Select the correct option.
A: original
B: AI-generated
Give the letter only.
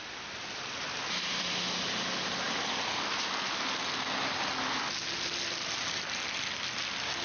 A